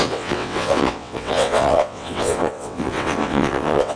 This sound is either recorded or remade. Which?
remade